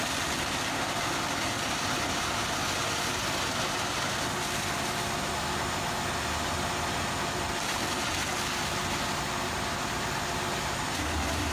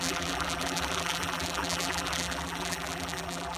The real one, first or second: first